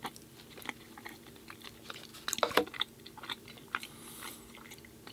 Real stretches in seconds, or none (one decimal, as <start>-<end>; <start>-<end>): 0.0-5.1